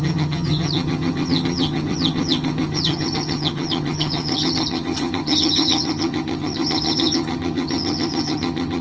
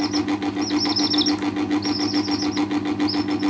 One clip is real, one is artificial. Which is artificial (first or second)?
first